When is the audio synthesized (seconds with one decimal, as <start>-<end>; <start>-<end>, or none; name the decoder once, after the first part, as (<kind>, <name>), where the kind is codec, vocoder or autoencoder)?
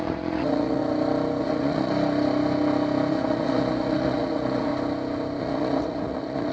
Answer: 0.0-0.8 (vocoder, Vocos); 1.4-1.9; 3.1-4.7; 5.4-6.5